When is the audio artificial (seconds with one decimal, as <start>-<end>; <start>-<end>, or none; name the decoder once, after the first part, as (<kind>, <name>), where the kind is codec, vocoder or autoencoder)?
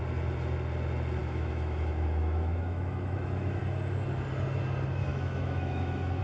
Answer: 1.2-3.6 (autoencoder, DAC-VAE); 5.1-6.2